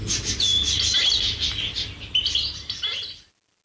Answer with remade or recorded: recorded